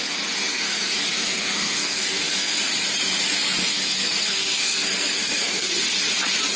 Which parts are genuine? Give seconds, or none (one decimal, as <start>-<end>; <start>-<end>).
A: 0.0-0.5; 2.6-3.7; 5.7-6.6